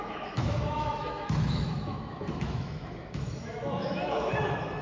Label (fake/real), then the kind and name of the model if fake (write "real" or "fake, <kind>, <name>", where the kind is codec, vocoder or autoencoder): fake, autoencoder, DAC-VAE